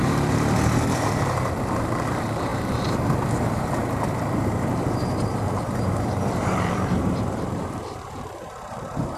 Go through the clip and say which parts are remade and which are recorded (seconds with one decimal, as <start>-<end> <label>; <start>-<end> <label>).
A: 0.0-9.2 remade